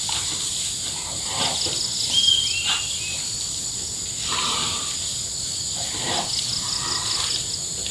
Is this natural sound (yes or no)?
yes